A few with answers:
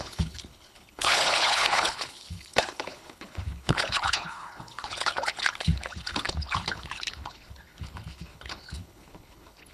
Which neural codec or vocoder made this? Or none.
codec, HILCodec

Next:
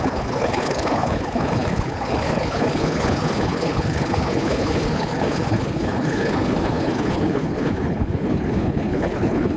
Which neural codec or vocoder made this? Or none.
codec, HILCodec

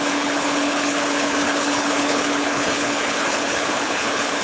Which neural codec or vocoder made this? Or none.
codec, HILCodec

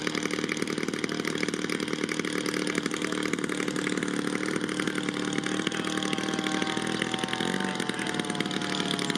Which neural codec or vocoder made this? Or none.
none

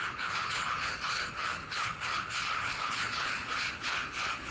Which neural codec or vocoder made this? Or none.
codec, HILCodec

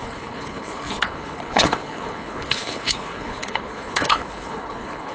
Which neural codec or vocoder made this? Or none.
codec, HILCodec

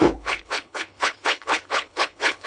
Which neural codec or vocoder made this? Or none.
codec, HILCodec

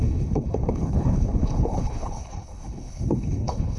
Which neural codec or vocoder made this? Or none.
codec, HILCodec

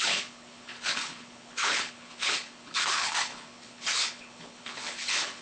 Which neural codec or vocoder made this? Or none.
codec, HILCodec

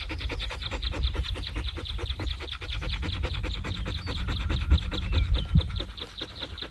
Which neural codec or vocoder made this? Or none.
none